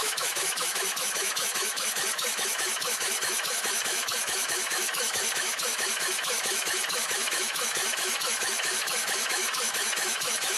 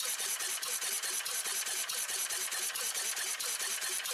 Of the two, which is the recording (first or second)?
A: second